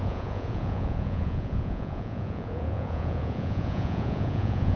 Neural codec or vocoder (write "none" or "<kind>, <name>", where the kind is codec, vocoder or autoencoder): vocoder, Vocos